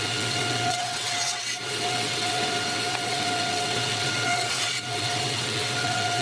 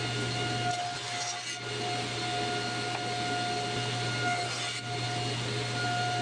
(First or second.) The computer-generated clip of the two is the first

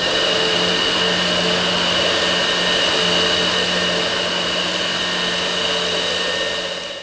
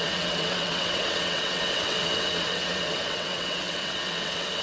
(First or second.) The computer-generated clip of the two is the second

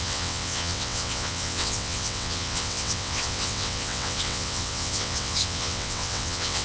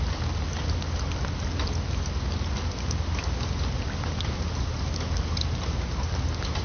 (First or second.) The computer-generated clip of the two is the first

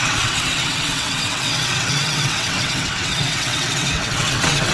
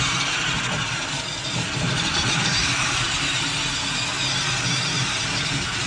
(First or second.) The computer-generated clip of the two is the first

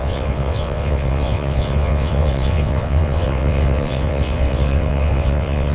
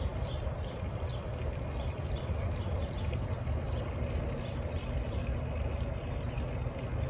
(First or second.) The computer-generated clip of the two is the first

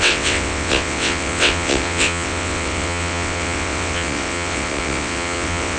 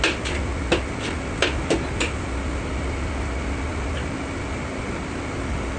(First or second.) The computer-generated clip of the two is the first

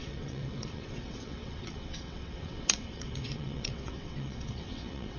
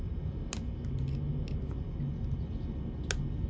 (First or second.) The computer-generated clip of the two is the first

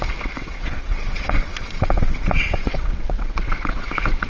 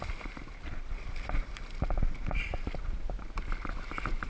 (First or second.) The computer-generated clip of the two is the first